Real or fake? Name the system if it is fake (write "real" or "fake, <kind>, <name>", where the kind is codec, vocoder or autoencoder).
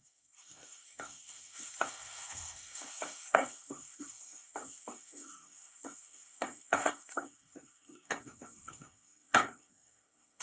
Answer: fake, codec, SNAC